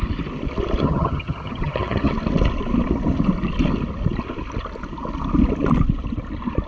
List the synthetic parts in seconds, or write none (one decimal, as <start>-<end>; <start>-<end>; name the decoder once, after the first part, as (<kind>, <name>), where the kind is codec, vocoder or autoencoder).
0.8-2.1 (vocoder, HiFi-GAN)